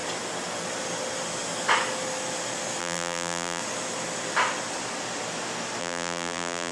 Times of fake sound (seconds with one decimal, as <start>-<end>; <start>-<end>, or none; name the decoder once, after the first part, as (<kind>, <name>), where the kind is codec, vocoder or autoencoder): 2.8-3.6 (vocoder, BigVGAN v2); 5.8-6.7